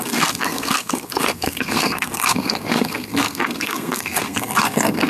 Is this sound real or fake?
fake